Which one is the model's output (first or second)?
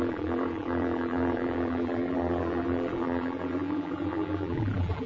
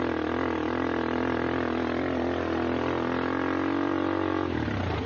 first